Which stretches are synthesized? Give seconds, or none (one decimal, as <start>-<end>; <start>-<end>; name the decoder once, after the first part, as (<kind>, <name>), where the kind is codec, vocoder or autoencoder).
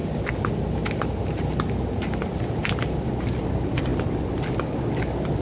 none